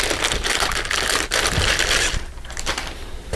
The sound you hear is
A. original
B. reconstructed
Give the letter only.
A